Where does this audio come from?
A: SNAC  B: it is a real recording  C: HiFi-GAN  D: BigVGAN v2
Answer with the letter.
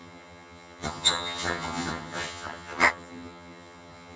C